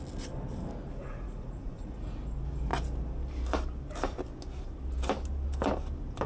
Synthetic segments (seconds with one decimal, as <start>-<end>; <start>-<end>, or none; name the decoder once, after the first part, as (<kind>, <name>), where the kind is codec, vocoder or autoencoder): 1.0-2.2 (vocoder, Vocos)